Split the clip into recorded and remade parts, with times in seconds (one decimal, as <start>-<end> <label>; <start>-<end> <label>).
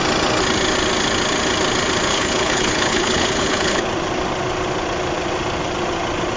0.0-2.1 recorded; 2.1-3.8 remade; 3.8-6.4 recorded